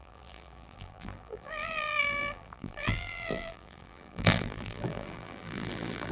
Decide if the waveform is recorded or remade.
remade